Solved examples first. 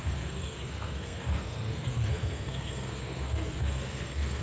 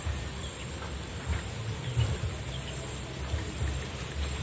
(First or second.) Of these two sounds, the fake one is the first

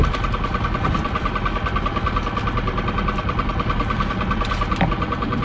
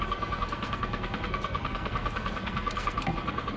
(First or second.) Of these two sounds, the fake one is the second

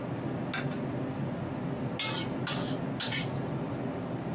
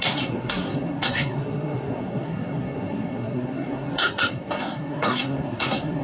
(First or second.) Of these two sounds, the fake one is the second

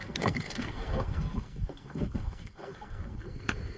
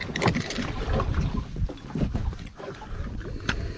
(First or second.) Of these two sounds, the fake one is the first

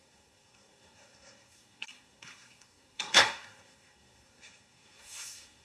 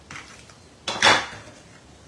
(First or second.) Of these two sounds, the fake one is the first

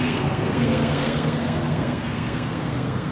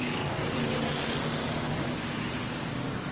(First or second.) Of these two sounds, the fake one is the first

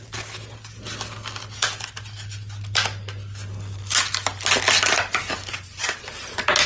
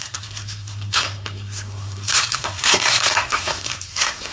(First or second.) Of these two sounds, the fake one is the second